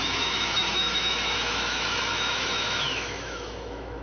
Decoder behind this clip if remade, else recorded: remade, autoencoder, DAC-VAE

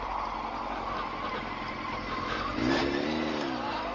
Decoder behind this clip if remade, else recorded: recorded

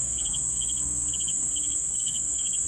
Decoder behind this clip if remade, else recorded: remade, codec, SNAC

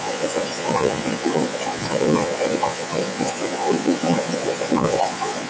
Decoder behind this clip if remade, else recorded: remade, vocoder, Vocos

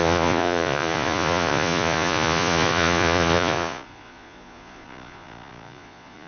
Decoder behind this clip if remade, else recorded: remade, vocoder, Vocos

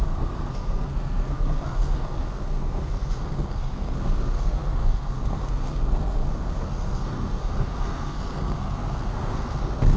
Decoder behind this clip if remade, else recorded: remade, codec, SNAC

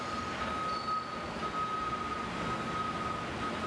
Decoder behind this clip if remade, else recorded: recorded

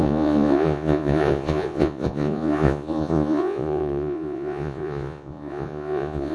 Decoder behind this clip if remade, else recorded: remade, vocoder, Vocos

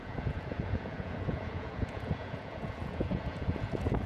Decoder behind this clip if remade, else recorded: remade, vocoder, Vocos